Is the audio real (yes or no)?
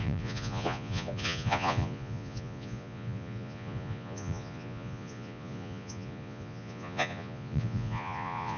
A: no